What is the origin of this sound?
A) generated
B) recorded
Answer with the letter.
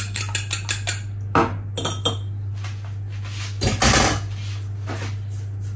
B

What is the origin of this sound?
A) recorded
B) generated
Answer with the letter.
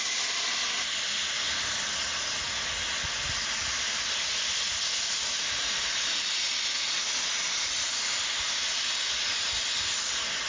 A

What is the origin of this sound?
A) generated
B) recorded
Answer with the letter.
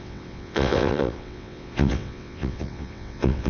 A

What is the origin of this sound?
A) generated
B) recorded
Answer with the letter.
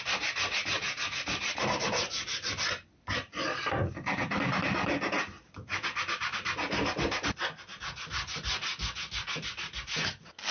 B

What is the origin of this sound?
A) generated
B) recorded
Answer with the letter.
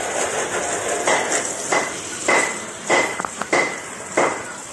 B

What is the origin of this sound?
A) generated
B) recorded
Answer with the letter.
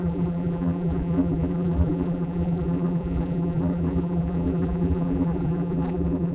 A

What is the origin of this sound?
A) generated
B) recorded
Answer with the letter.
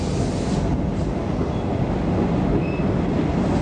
B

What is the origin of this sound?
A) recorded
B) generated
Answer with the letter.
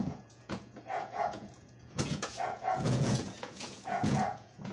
B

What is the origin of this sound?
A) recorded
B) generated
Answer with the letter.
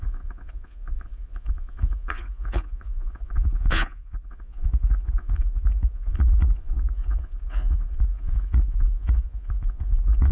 B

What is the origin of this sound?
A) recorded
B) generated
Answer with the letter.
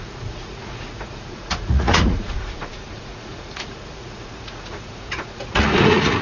B